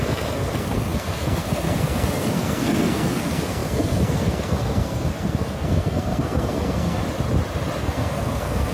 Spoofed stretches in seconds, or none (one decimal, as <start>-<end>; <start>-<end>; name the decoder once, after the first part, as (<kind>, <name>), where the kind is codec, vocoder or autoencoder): 0.0-7.0 (codec, SNAC); 7.8-8.7